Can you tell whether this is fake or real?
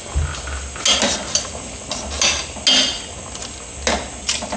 real